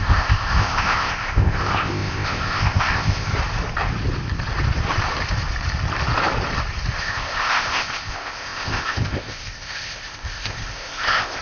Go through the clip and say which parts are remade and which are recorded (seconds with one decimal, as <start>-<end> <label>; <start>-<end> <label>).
0.0-3.3 remade; 3.3-7.0 recorded; 7.0-11.4 remade